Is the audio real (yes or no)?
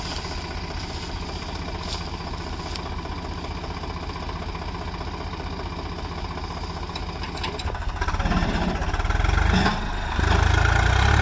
yes